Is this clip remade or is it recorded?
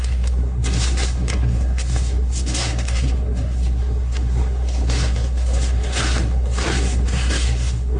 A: remade